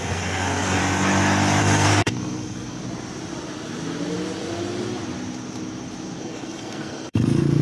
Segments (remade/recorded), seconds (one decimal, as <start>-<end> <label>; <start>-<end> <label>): 0.0-0.8 remade; 0.8-1.6 recorded; 1.6-2.8 remade; 2.8-6.2 recorded; 6.2-7.6 remade